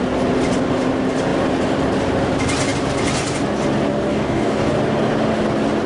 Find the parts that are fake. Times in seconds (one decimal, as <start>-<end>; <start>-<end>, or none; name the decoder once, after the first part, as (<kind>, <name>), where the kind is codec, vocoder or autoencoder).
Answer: 4.1-4.7 (codec, DAC)